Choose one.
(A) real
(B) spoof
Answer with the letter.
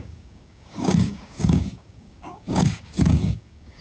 B